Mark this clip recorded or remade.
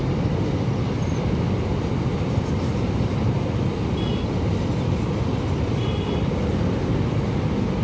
recorded